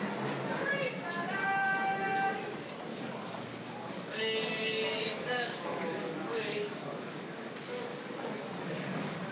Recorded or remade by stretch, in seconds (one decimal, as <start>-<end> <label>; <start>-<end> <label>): 0.0-2.9 recorded; 2.9-7.5 remade; 7.5-7.9 recorded; 7.9-9.3 remade